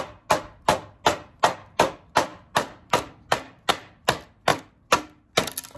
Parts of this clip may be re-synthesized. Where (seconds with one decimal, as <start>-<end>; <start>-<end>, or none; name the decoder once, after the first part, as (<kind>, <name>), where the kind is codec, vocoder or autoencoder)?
none